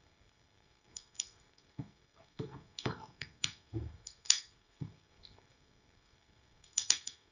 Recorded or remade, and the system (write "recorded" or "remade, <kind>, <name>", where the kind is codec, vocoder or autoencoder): remade, codec, SNAC